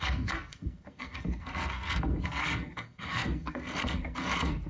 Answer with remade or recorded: remade